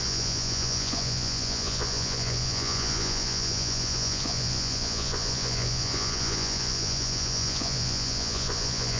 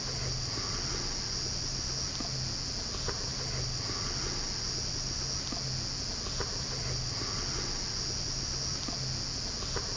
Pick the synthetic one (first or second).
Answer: first